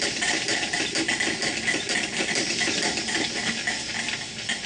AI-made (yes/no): no